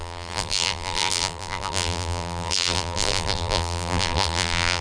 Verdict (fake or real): fake